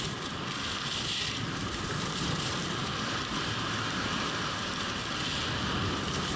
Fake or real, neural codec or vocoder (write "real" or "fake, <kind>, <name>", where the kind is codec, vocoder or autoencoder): real